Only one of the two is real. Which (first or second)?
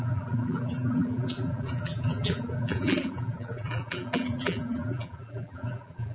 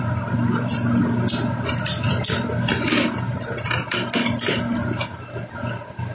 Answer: second